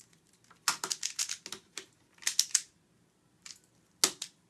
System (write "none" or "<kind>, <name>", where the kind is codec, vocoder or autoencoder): none